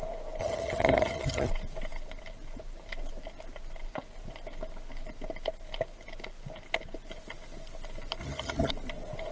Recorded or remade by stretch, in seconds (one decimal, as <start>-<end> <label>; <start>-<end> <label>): 0.0-0.4 recorded; 0.4-1.5 remade; 1.5-8.2 recorded; 8.2-8.7 remade; 8.7-9.3 recorded